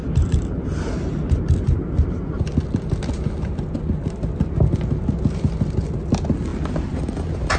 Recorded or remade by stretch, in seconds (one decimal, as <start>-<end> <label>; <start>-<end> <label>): 0.0-7.6 recorded